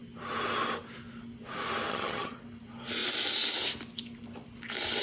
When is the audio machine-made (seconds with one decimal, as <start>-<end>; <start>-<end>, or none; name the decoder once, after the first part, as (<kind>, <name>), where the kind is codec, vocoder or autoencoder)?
1.9-2.4 (vocoder, HiFi-GAN)